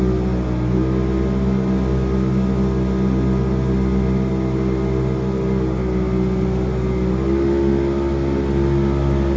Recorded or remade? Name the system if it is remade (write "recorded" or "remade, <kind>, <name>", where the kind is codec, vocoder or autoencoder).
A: recorded